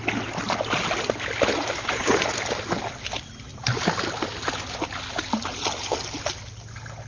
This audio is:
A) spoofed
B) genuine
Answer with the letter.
B